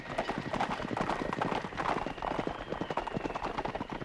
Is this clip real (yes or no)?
yes